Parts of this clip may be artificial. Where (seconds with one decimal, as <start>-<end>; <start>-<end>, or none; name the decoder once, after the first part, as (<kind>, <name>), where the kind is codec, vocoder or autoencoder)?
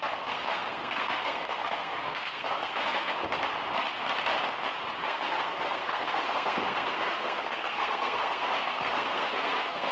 0.0-3.1 (codec, SNAC); 5.0-9.9